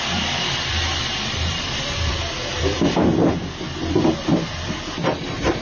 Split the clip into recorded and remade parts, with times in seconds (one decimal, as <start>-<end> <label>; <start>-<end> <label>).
0.0-3.1 remade; 3.1-4.2 recorded; 4.2-5.6 remade